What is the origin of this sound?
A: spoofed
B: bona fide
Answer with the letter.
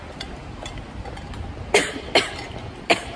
B